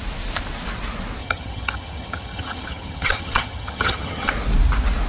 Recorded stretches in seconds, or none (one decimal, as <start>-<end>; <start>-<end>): 0.0-1.2; 4.3-5.1